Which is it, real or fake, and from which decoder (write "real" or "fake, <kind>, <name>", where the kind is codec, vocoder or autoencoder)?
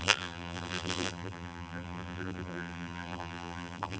fake, vocoder, BigVGAN v2